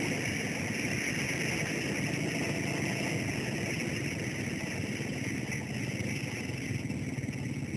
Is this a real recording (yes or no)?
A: yes